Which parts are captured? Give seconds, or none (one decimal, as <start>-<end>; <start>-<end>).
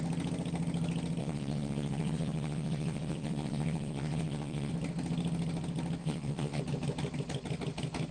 0.0-1.2; 4.7-6.0; 6.6-8.1